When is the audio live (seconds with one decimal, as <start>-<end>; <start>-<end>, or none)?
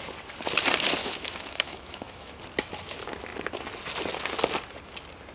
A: 0.0-1.0; 2.4-5.3